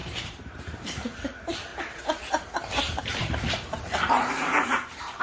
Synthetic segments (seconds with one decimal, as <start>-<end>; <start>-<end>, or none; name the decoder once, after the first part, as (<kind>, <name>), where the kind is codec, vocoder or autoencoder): 0.0-5.2 (vocoder, BigVGAN v2)